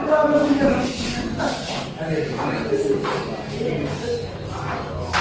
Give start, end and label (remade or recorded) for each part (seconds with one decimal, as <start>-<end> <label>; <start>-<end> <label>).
0.0-5.2 recorded

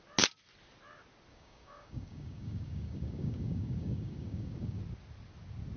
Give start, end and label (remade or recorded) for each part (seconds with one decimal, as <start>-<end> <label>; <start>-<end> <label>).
0.0-1.3 recorded; 1.3-4.8 remade; 4.8-5.8 recorded

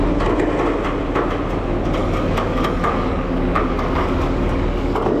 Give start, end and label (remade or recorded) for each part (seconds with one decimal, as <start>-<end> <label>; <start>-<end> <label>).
0.0-2.0 recorded; 2.0-5.2 remade

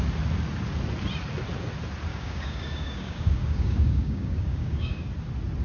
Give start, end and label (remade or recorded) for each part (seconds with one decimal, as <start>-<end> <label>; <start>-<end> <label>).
0.0-2.1 recorded; 2.1-5.1 remade; 5.1-5.6 recorded

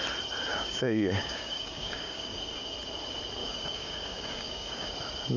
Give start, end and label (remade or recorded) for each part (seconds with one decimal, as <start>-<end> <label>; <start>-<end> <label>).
0.0-0.5 recorded; 0.5-2.4 remade; 2.4-3.4 recorded; 3.4-4.9 remade; 4.9-5.4 recorded